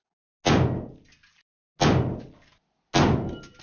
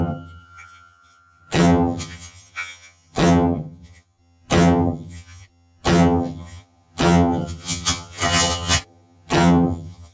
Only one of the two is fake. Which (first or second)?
second